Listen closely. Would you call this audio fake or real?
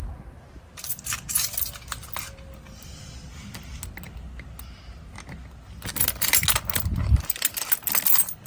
real